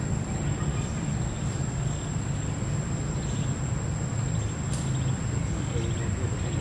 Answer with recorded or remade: recorded